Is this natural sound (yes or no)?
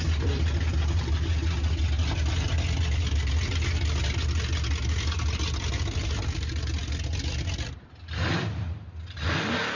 yes